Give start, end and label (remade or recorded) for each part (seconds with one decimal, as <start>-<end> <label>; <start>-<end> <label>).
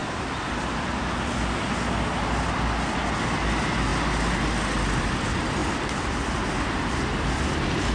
0.0-7.9 recorded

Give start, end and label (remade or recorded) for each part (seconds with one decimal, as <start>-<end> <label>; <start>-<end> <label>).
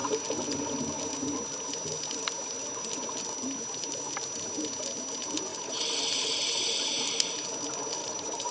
0.0-5.5 recorded; 5.5-6.4 remade; 6.4-8.0 recorded; 8.0-8.5 remade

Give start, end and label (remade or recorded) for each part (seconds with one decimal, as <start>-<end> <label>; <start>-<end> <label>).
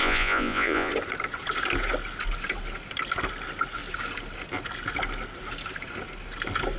0.0-0.9 remade; 0.9-6.8 recorded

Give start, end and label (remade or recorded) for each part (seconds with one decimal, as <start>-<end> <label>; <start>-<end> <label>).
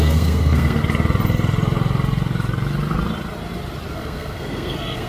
0.0-0.8 remade; 0.8-3.9 recorded; 3.9-5.1 remade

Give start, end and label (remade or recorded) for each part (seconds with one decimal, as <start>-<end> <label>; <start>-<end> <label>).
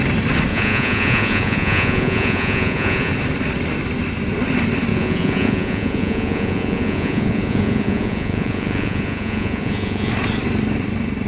0.0-0.5 recorded; 0.5-3.1 remade; 3.1-4.9 recorded; 4.9-10.1 remade; 10.1-11.3 recorded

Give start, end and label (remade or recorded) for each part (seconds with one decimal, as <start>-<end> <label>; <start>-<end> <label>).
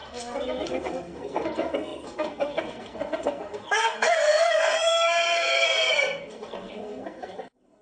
0.0-7.8 remade